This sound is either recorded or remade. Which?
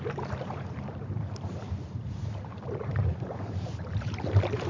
remade